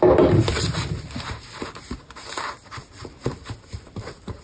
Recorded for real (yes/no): yes